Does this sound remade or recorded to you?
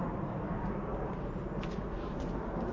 remade